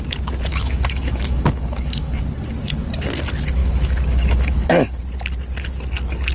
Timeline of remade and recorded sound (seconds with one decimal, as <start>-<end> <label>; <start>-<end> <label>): 0.0-0.5 recorded; 0.5-2.2 remade; 2.2-3.6 recorded; 3.6-5.0 remade; 5.0-6.3 recorded